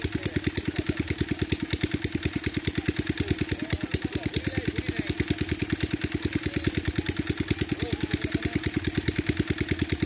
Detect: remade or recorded recorded